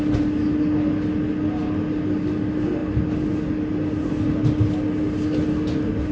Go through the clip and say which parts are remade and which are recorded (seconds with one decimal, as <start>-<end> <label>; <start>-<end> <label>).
0.0-6.1 recorded